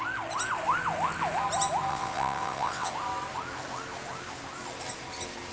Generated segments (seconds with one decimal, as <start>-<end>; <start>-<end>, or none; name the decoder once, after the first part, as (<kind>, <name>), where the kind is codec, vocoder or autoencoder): 1.9-2.9 (vocoder, WaveNeXt)